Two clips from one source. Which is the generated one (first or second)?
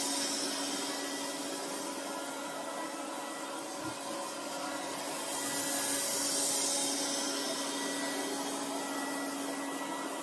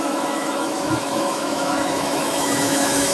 second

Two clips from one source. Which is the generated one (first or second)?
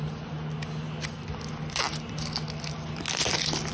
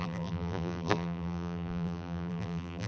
second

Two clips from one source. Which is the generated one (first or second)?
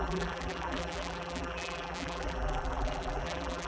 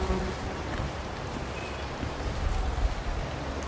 first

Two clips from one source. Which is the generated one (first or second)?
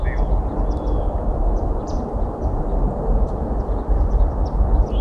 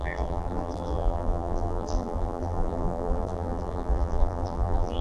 second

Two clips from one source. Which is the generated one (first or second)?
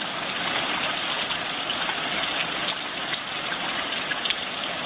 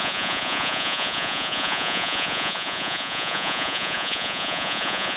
second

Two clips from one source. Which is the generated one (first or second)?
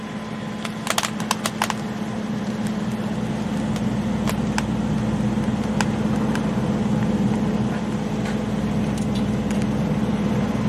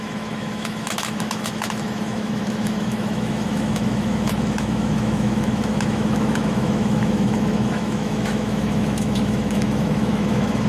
second